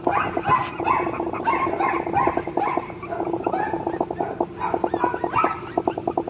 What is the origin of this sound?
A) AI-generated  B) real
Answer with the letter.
B